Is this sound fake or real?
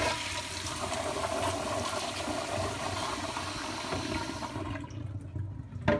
real